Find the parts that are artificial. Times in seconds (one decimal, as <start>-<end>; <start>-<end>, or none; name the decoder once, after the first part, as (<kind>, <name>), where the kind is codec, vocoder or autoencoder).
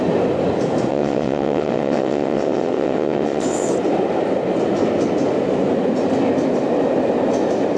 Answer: 0.9-3.7 (vocoder, WaveNeXt)